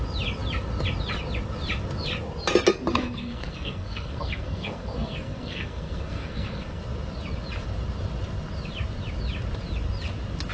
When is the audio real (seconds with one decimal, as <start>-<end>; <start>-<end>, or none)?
0.0-2.9; 6.8-10.5